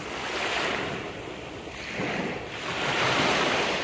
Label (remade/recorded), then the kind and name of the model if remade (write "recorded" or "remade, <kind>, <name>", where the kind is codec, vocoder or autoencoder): recorded